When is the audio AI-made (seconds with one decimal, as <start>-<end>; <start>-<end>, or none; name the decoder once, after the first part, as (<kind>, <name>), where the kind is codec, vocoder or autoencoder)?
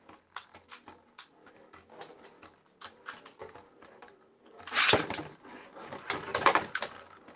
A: none